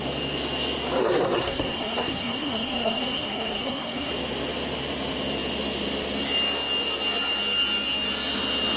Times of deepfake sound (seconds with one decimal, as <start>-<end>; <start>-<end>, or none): 1.0-4.1

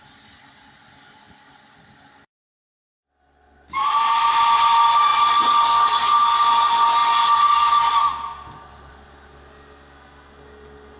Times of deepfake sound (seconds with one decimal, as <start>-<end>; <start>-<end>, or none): none